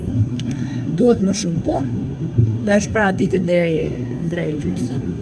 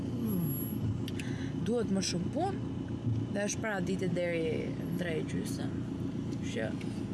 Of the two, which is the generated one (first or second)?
first